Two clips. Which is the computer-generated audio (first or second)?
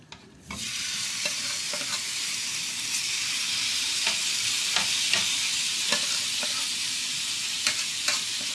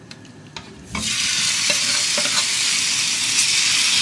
first